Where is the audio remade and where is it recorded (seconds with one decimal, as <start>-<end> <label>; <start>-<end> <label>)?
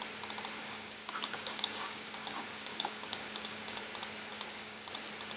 0.0-0.6 recorded; 0.6-3.8 remade; 3.8-4.3 recorded; 4.3-4.9 remade; 4.9-5.4 recorded